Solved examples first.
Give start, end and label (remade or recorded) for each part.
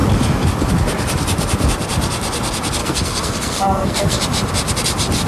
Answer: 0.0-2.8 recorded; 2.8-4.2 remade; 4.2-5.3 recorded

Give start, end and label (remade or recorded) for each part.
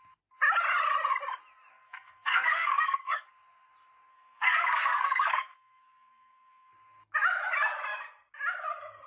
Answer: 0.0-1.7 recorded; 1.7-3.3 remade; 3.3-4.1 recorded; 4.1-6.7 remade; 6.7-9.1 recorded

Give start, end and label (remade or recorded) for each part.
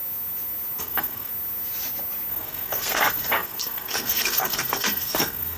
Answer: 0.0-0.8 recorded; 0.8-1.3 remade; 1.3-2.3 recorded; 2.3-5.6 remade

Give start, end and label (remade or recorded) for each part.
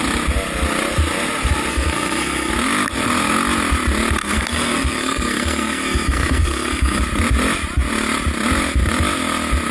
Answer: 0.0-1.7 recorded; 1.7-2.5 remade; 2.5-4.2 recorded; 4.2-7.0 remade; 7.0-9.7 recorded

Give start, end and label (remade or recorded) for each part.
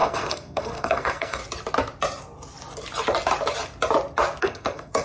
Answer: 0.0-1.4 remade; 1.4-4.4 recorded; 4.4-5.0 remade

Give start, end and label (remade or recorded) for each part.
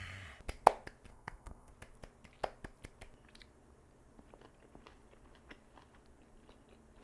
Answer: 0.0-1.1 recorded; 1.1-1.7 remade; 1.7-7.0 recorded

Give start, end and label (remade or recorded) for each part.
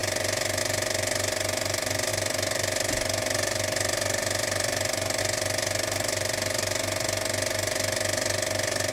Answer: 0.0-8.9 recorded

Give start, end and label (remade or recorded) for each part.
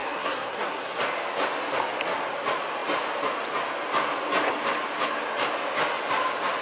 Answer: 0.0-1.0 remade; 1.0-6.6 recorded